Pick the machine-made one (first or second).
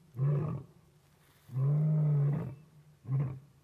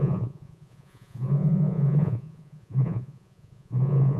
second